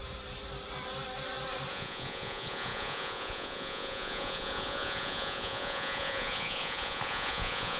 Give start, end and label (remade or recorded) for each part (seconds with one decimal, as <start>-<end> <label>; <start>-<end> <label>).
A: 0.0-1.7 recorded; 1.7-7.8 remade